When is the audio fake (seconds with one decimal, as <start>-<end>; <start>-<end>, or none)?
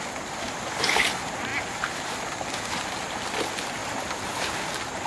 none